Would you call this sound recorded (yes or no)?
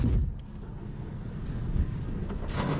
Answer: no